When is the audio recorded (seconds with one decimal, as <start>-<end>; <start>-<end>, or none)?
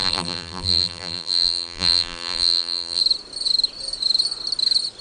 3.0-5.0